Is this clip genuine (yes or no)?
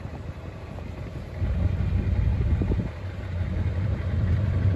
no